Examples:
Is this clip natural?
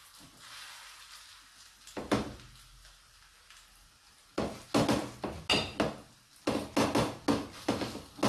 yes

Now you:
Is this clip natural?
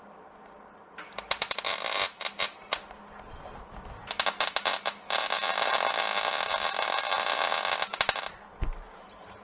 yes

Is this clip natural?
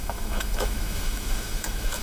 no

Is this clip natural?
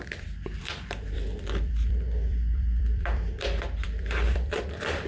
no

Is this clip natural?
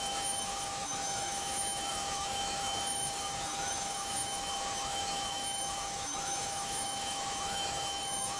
no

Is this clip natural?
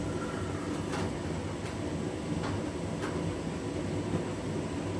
yes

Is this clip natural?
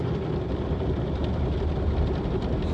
yes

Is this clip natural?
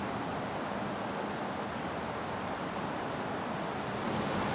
yes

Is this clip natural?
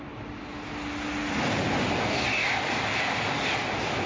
yes